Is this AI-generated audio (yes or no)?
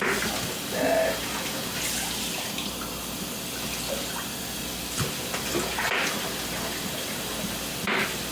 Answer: no